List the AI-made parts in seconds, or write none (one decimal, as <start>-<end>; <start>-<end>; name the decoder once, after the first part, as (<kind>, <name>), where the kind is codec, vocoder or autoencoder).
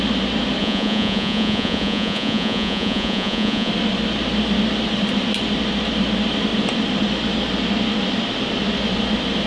0.6-3.7 (vocoder, Vocos)